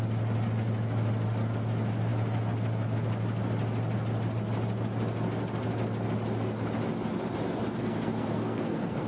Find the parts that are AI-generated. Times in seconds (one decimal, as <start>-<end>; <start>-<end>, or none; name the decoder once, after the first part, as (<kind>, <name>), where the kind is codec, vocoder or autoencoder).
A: 7.8-9.1 (codec, SNAC)